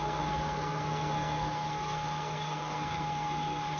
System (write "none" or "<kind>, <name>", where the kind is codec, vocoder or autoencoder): codec, SNAC